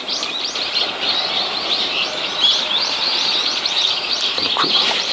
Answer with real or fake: fake